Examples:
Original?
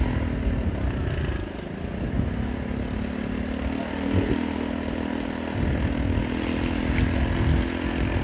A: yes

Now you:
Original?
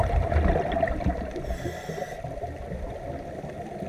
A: yes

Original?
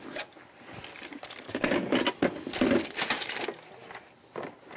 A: yes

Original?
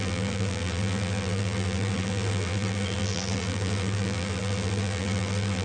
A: no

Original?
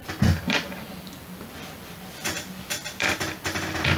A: no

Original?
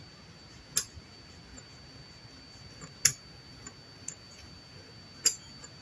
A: yes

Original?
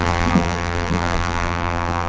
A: no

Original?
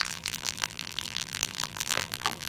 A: no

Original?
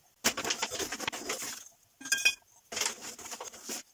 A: yes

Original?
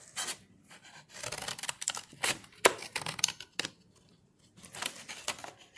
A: yes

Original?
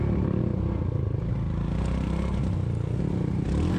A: yes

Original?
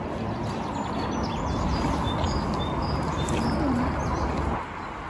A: yes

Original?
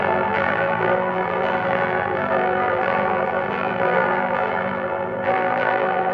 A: no